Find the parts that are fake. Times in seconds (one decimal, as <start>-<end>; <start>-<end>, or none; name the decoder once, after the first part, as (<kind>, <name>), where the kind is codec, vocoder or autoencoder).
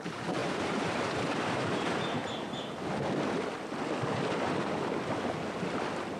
0.0-2.2 (vocoder, BigVGAN v2)